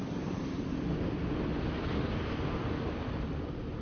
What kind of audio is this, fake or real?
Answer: fake